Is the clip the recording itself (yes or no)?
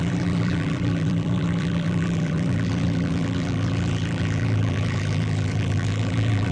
no